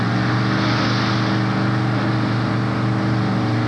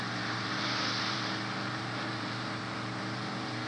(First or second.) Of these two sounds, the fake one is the second